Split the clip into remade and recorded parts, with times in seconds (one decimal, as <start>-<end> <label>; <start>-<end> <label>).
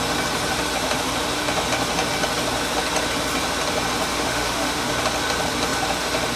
0.0-4.1 recorded; 4.1-4.9 remade; 4.9-6.4 recorded